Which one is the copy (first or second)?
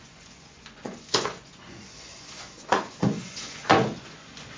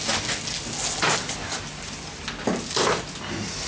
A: first